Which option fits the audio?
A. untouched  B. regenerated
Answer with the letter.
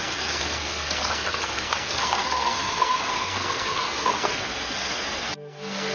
B